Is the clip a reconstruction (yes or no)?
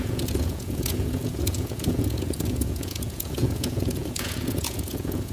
yes